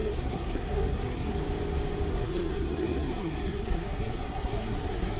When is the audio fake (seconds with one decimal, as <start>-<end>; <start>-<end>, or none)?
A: 0.0-1.4; 2.1-5.2